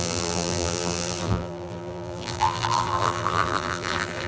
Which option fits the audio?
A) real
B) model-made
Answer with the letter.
B